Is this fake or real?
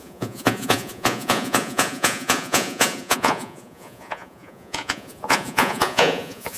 fake